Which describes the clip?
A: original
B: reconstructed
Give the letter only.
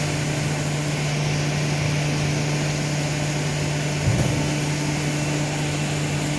A